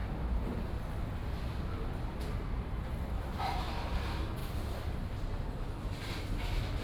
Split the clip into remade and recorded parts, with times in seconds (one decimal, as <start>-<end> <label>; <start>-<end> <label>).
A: 0.0-4.4 recorded; 4.4-5.6 remade; 5.6-6.8 recorded